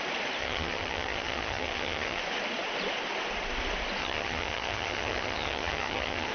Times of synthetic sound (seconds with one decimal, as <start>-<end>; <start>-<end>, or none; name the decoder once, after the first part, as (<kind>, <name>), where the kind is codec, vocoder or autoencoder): 0.4-2.2 (vocoder, HiFi-GAN); 4.0-6.3